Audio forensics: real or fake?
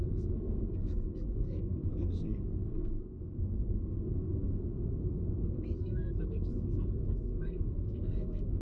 fake